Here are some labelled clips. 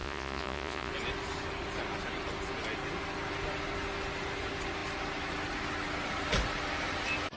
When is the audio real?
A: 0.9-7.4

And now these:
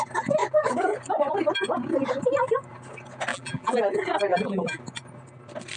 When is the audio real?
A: 0.0-3.3; 3.8-4.3; 4.8-5.8